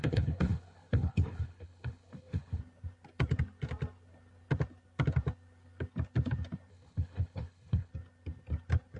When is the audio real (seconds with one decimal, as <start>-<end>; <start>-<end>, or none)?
2.6-6.7; 7.9-9.0